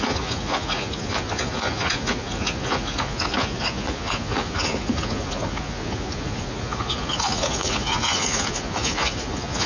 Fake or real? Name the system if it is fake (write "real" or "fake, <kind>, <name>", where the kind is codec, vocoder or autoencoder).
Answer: fake, vocoder, Vocos